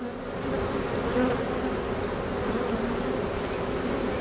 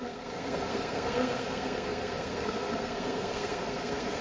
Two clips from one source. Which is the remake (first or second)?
second